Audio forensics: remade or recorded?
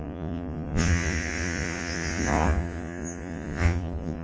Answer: remade